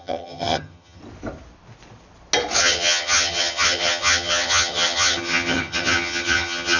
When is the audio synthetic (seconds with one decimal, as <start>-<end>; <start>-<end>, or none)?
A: 0.0-1.0; 2.6-6.8